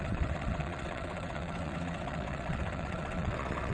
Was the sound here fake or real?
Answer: fake